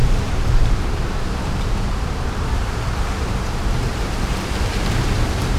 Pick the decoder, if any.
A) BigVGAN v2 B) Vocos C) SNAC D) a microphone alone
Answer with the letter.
A